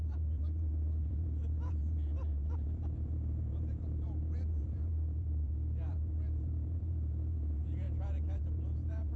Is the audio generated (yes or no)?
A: yes